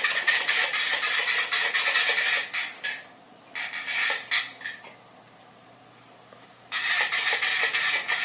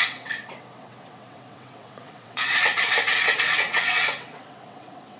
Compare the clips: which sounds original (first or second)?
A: first